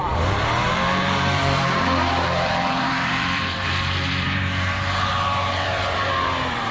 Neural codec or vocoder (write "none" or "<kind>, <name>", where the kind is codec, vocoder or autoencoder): vocoder, BigVGAN v2